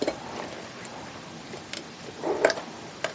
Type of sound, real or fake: real